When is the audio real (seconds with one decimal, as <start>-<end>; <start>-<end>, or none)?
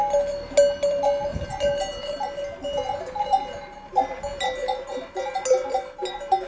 0.0-6.5